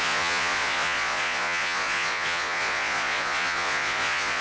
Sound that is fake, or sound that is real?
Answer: fake